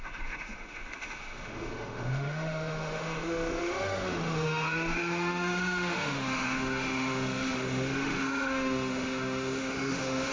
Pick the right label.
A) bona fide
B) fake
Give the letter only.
B